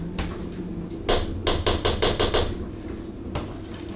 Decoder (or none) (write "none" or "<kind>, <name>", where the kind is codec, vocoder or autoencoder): none